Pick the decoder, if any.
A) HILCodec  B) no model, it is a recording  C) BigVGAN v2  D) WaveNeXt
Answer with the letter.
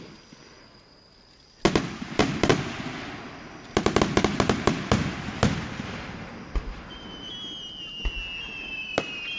B